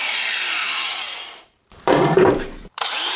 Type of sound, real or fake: fake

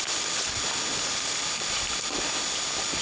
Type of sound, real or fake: real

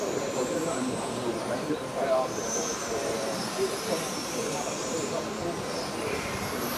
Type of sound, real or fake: fake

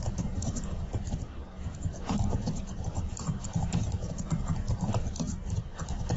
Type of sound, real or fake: fake